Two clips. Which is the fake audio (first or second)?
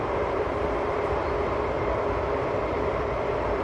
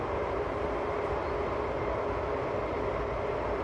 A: first